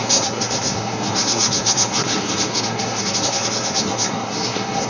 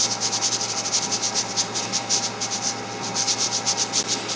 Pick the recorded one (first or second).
second